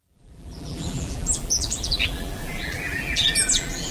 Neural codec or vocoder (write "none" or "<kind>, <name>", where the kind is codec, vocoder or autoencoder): vocoder, BigVGAN v2